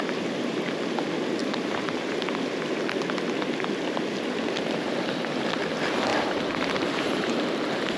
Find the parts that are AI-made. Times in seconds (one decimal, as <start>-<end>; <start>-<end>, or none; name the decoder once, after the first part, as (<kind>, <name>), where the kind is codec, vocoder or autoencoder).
1.4-2.2 (vocoder, BigVGAN v2); 6.1-7.4